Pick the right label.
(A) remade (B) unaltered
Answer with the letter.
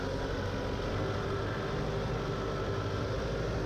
B